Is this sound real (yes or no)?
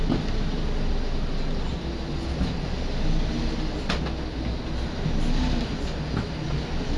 yes